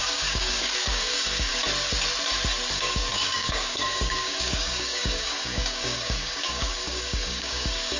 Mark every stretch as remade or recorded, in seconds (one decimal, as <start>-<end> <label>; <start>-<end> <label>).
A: 0.0-1.5 remade; 1.5-2.7 recorded; 2.7-8.0 remade